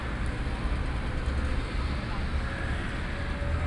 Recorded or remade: recorded